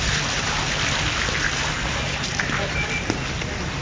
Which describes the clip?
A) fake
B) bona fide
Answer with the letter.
B